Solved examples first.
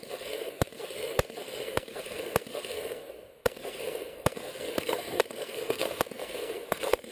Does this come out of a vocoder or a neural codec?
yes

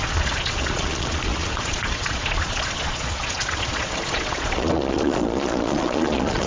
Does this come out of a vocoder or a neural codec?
yes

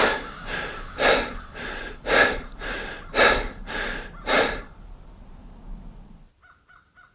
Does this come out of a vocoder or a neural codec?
no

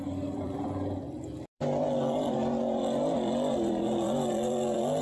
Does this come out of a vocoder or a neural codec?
yes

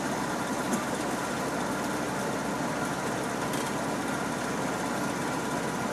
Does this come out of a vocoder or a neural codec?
no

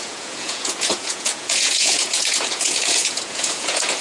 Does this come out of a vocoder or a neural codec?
yes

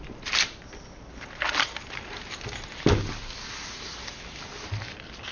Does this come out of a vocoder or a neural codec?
no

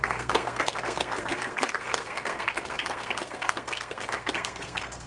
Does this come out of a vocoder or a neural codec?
yes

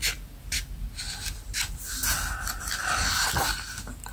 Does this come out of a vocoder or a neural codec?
no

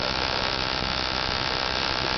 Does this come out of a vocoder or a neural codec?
no